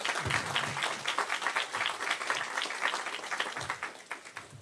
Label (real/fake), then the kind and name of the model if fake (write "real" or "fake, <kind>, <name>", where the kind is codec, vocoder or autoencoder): real